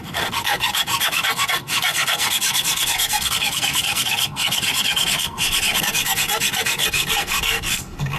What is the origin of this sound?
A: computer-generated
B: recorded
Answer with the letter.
A